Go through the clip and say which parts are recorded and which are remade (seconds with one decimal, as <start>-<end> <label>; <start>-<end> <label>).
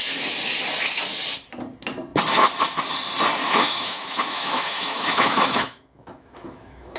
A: 0.0-3.4 recorded; 3.4-7.0 remade